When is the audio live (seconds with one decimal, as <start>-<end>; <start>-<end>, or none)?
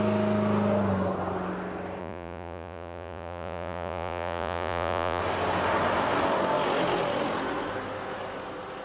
0.0-2.0; 5.2-8.8